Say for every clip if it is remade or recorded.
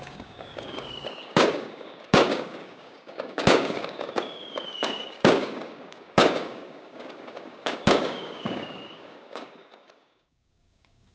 remade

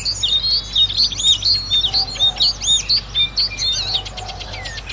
recorded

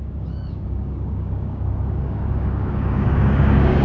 remade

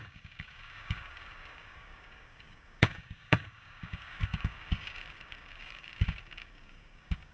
remade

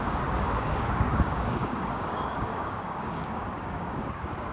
remade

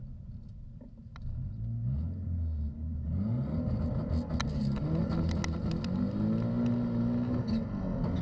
recorded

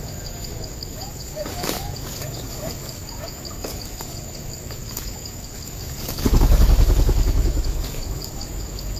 remade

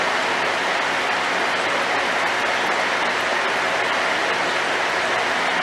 recorded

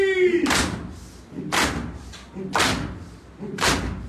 recorded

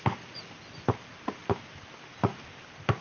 recorded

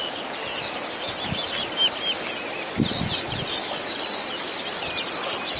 recorded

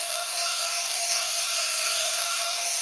remade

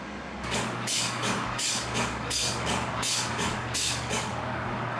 remade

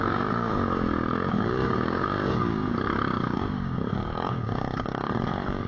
remade